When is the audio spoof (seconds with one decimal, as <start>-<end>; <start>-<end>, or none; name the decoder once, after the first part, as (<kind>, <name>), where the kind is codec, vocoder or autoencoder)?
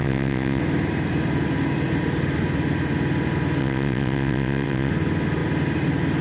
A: 0.0-0.6 (vocoder, WaveNeXt); 3.6-4.9